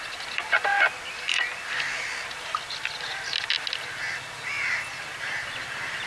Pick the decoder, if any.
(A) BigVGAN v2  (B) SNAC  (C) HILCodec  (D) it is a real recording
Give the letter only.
D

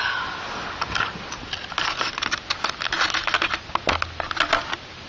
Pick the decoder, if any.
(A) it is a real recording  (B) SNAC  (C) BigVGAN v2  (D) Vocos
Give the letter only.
A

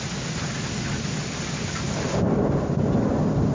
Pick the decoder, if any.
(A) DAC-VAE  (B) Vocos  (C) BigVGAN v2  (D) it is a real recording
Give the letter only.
C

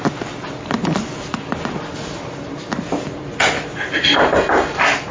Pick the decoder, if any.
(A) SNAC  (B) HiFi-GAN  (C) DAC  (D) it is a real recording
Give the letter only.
D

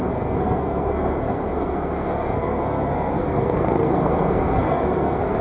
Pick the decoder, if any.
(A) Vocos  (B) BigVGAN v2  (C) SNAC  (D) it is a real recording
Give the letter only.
C